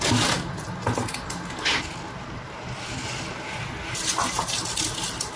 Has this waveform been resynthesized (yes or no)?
no